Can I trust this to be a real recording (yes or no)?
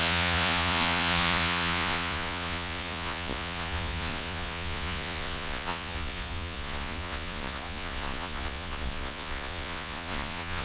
no